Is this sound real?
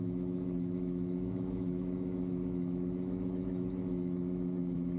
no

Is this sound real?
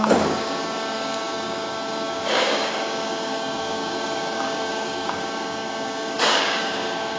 no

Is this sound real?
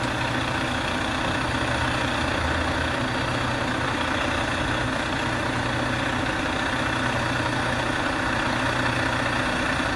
yes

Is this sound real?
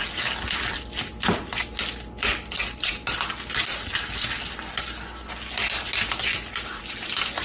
yes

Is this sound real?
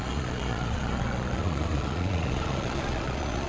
no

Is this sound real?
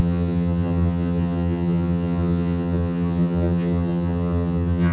no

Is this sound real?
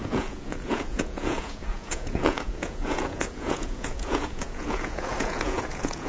no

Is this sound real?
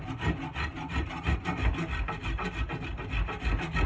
yes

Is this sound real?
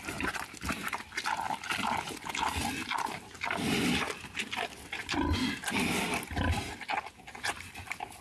yes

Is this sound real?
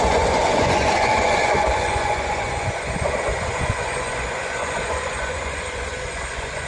no